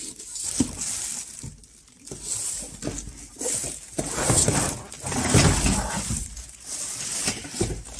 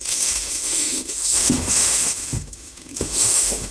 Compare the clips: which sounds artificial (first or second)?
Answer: second